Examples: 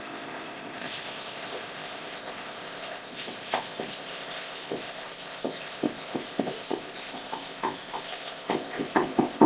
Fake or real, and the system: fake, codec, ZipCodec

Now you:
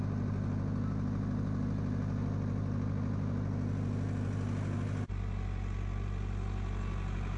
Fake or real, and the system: real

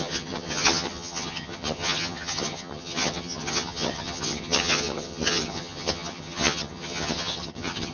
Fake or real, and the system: fake, vocoder, HiFi-GAN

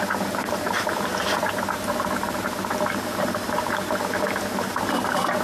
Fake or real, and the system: fake, vocoder, BigVGAN v2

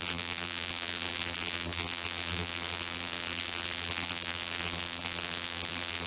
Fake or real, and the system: fake, vocoder, BigVGAN v2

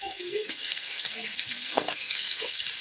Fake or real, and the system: fake, codec, SNAC